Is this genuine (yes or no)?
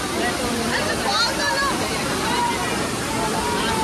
yes